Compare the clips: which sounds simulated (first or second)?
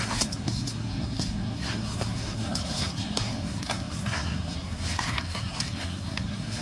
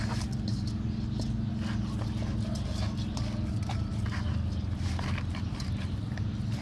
first